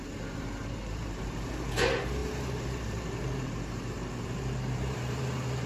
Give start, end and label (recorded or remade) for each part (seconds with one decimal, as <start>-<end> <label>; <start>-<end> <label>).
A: 0.0-5.7 remade